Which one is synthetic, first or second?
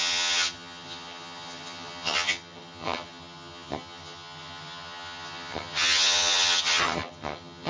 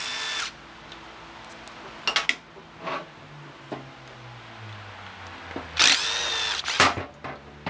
first